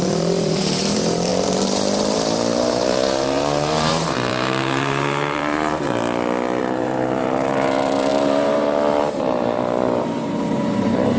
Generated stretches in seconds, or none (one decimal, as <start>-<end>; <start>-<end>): 0.0-6.0; 6.6-11.2